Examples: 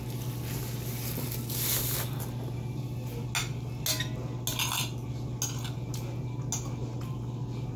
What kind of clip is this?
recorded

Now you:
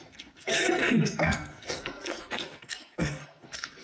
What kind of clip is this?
remade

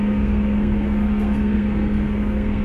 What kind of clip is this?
remade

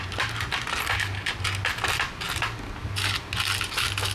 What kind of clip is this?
recorded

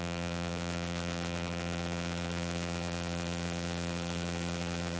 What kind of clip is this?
remade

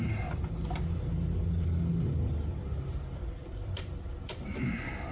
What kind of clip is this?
recorded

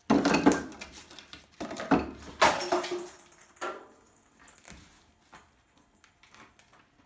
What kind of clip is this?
recorded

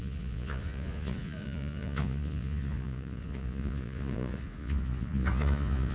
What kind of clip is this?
remade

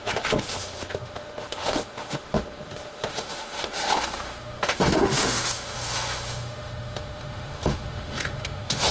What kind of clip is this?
remade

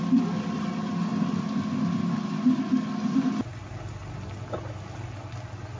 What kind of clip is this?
recorded